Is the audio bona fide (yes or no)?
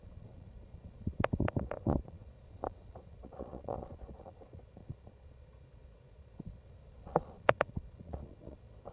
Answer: no